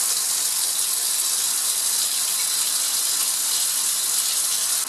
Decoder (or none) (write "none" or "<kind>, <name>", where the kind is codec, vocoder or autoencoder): none